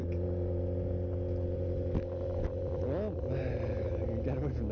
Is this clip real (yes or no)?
yes